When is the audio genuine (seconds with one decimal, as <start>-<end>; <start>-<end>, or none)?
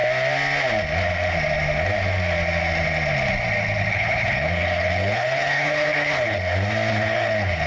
0.0-3.9; 6.4-6.9